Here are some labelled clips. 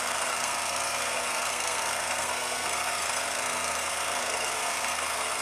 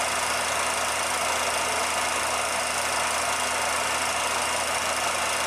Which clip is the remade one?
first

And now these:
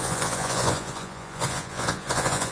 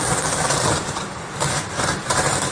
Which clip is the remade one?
first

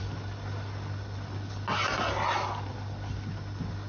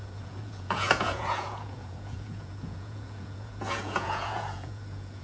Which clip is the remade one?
second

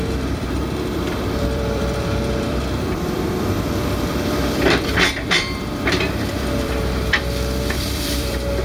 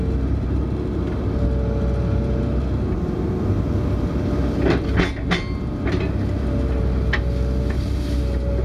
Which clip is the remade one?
first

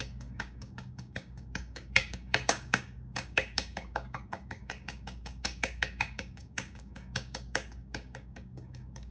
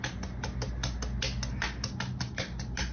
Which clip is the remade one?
first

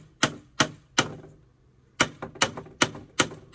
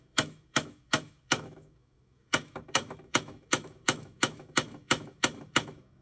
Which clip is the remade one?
second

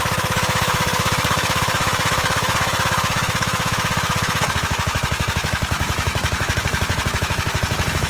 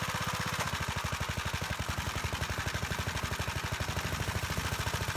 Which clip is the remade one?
first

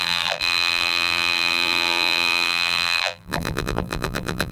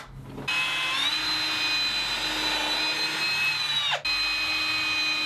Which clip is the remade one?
first